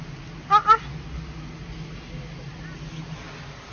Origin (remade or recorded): recorded